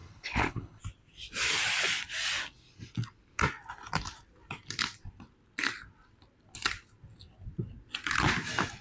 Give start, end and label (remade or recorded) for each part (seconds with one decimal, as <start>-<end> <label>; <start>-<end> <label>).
0.0-0.8 remade; 0.8-8.8 recorded